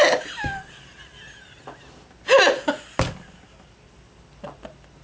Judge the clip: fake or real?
real